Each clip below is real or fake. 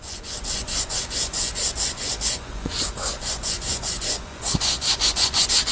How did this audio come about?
fake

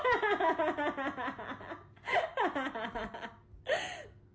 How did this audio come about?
real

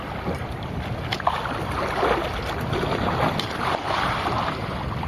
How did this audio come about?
real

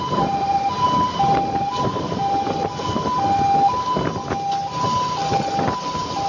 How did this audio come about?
real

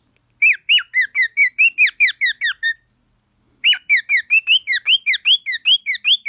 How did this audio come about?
real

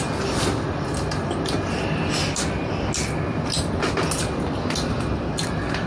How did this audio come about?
real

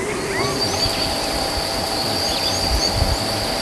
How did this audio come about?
real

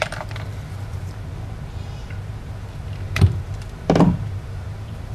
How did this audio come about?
fake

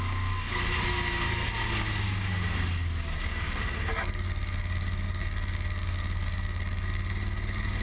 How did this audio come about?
fake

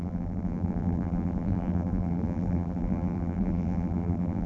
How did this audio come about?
fake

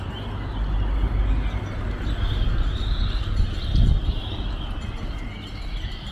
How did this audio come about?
real